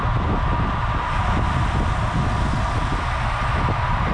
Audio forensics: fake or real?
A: real